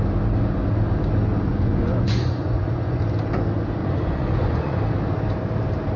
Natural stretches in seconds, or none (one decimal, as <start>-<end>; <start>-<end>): 0.0-1.5; 3.0-3.8; 4.8-6.0